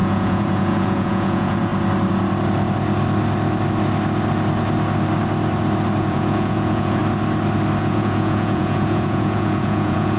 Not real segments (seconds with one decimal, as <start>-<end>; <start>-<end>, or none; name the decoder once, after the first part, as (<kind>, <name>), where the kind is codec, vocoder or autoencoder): 0.0-1.7 (vocoder, Vocos); 6.0-7.0; 7.8-10.2